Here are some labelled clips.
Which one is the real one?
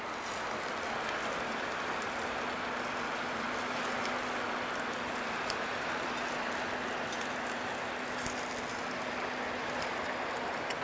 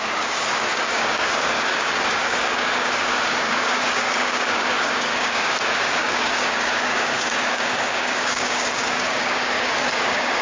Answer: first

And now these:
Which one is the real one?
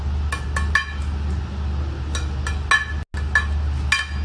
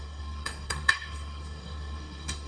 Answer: first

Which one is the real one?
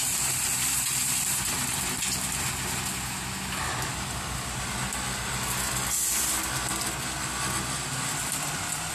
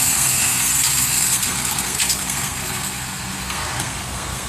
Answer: first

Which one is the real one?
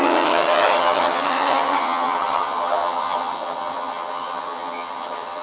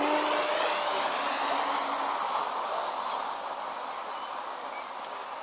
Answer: second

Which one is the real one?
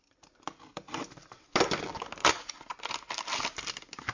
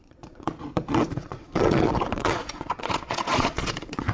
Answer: first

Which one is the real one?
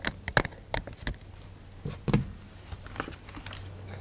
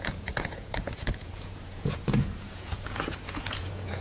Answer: first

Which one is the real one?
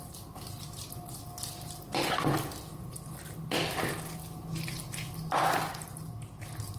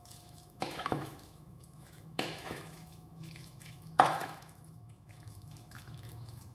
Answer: first